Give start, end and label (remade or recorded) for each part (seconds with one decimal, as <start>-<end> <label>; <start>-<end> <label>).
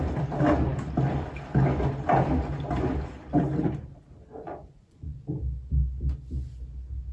0.0-4.3 recorded; 4.3-5.2 remade; 5.2-7.1 recorded